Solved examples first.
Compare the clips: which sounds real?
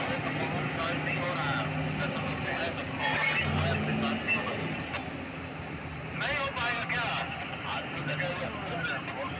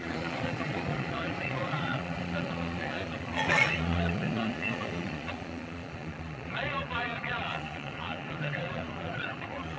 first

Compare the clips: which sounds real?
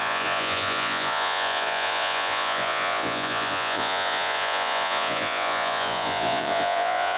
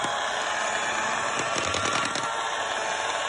second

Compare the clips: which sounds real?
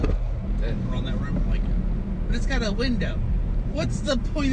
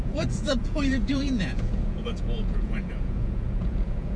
first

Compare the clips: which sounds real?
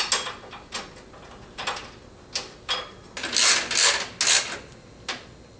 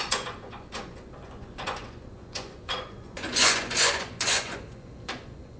first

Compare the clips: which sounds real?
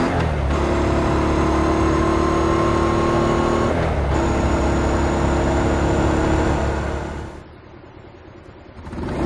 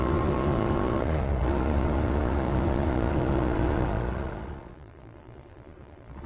first